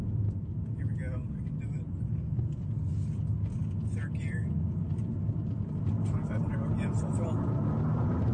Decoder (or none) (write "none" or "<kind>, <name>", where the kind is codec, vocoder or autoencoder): none